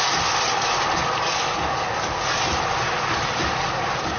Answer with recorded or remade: recorded